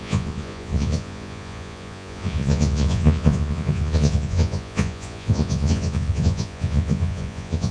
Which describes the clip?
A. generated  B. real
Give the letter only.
A